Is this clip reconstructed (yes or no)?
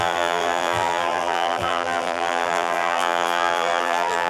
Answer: yes